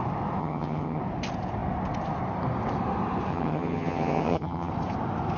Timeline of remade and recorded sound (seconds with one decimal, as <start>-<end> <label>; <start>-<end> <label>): 0.0-0.4 recorded; 0.4-1.0 remade; 1.0-3.3 recorded; 3.3-4.7 remade; 4.7-5.4 recorded